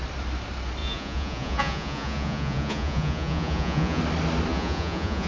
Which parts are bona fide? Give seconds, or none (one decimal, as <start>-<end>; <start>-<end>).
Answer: 0.0-0.8; 4.0-4.5